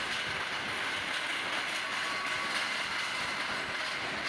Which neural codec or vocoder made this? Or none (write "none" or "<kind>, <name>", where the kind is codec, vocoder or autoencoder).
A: none